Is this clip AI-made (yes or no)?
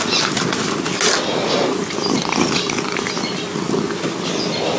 no